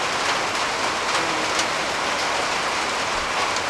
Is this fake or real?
real